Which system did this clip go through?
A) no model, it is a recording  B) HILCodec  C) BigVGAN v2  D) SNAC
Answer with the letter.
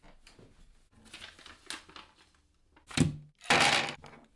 A